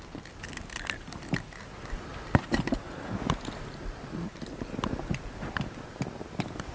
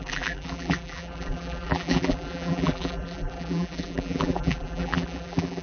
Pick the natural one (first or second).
first